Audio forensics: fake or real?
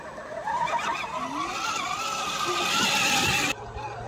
real